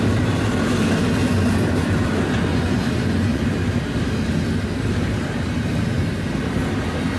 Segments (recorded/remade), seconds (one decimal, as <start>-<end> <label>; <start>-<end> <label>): 0.0-2.5 recorded; 2.5-3.4 remade; 3.4-7.2 recorded